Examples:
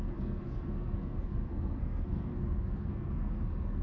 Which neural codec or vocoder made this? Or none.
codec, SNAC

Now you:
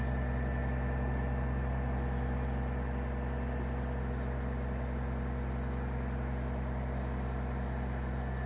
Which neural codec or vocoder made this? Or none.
none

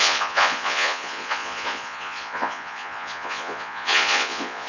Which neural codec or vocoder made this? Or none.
vocoder, Vocos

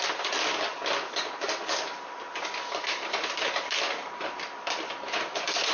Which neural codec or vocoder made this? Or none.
none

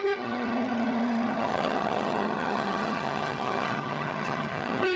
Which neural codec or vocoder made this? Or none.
vocoder, HiFi-GAN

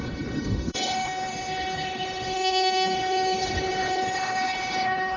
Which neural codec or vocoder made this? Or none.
codec, HILCodec